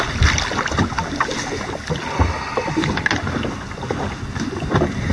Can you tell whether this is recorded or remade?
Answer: recorded